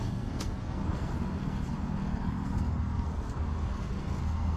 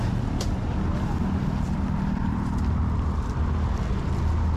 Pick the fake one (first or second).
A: first